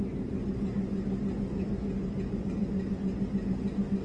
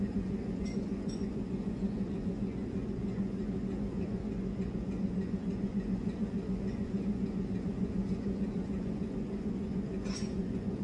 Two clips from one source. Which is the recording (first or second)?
first